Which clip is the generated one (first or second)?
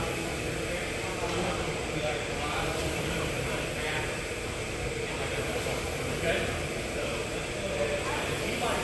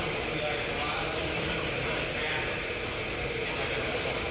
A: first